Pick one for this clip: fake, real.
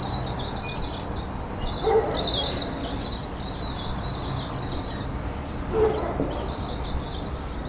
real